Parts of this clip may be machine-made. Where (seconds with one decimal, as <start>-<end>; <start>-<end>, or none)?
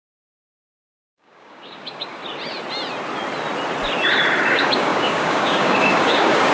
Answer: 0.0-2.2; 4.5-6.5